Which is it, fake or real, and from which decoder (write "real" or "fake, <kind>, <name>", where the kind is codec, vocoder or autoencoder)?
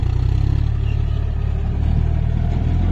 real